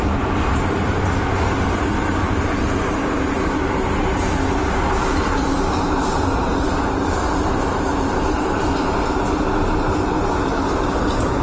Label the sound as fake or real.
real